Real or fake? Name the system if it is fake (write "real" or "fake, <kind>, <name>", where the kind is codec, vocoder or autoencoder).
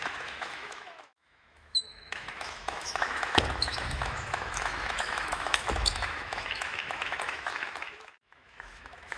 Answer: fake, autoencoder, DAC-VAE